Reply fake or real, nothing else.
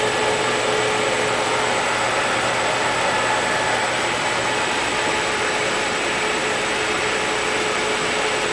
real